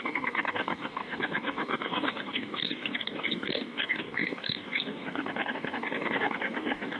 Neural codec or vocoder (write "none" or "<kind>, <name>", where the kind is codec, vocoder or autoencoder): codec, DAC